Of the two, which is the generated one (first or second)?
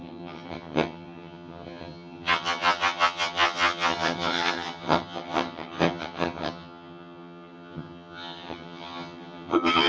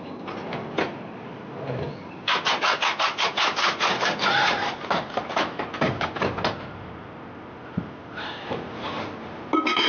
first